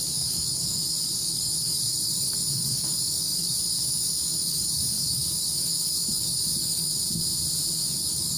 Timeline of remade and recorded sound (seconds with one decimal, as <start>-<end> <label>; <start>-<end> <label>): 0.0-6.9 remade; 6.9-7.8 recorded; 7.8-8.4 remade